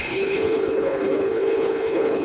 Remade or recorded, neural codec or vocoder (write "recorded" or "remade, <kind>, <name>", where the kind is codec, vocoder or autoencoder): remade, codec, HILCodec